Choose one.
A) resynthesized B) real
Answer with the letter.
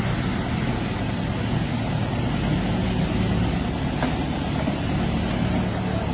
B